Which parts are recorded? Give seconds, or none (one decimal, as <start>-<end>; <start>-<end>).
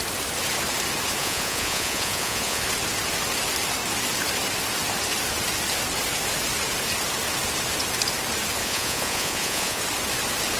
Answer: 0.0-1.2; 2.6-8.6; 9.8-10.6